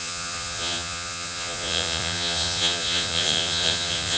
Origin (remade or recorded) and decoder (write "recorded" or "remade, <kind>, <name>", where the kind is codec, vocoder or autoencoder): remade, vocoder, Vocos